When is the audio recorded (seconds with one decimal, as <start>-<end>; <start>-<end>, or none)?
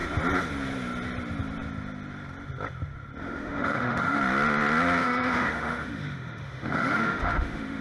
0.0-3.2; 4.2-5.0